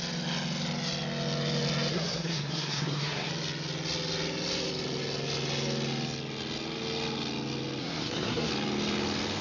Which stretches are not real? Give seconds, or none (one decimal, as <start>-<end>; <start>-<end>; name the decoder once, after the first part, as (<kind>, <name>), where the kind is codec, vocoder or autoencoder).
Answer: 1.9-3.3 (codec, SNAC); 7.8-8.5